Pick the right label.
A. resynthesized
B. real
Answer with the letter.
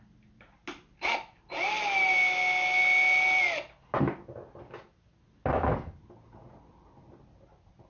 B